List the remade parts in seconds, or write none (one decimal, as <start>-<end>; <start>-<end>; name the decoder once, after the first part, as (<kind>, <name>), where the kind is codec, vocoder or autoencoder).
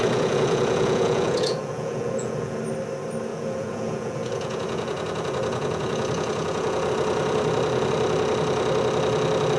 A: 0.0-2.6 (vocoder, Vocos); 3.3-6.9